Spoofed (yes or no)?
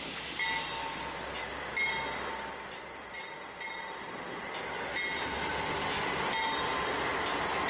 no